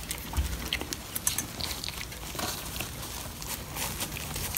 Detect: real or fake real